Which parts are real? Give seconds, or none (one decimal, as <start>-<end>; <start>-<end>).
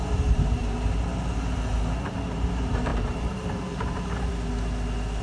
0.6-2.1; 4.3-5.2